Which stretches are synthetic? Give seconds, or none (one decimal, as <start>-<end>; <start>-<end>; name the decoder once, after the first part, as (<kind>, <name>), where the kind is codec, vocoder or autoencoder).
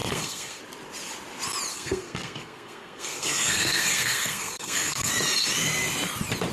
0.0-0.6 (codec, SNAC); 1.7-5.1